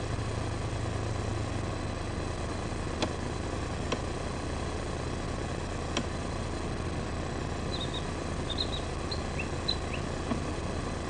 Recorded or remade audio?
recorded